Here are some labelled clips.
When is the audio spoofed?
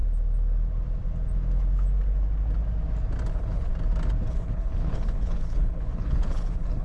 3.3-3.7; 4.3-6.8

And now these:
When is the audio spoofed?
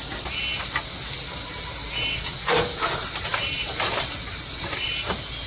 none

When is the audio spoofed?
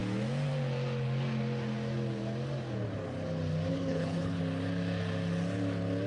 3.7-4.4